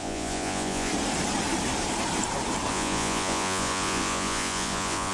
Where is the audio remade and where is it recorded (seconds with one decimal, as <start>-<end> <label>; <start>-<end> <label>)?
0.0-0.9 remade; 0.9-2.7 recorded; 2.7-5.1 remade